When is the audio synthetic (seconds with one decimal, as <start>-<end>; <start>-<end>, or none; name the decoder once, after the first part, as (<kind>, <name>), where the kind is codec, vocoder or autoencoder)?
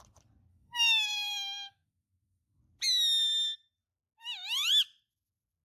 0.5-2.6 (autoencoder, DAC-VAE)